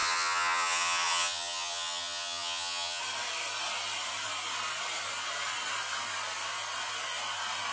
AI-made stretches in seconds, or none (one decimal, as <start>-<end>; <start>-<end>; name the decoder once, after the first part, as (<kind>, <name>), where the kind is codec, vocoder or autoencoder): 0.0-3.0 (vocoder, HiFi-GAN)